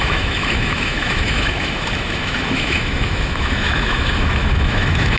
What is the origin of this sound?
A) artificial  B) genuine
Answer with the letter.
A